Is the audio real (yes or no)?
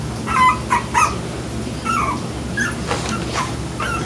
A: yes